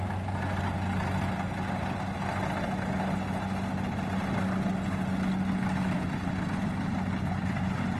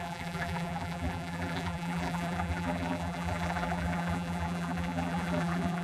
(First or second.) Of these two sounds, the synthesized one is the second